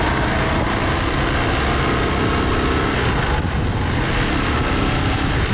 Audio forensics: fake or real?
real